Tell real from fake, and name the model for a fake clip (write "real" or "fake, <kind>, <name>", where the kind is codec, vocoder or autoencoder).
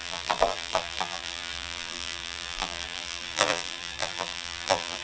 fake, vocoder, BigVGAN v2